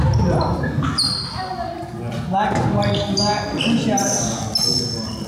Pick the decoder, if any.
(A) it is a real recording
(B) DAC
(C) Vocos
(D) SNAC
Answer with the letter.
A